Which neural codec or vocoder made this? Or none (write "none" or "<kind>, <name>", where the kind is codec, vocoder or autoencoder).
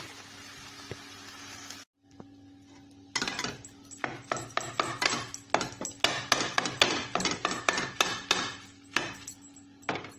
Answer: none